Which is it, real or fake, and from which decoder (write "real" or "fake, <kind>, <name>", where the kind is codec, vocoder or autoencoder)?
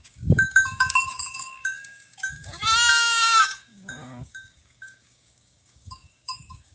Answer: fake, codec, DAC